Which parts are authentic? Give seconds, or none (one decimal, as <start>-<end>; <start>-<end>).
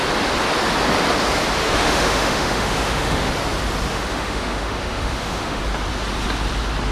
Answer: 0.0-1.6; 3.3-3.9; 5.6-6.9